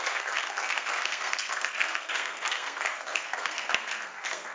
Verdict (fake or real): fake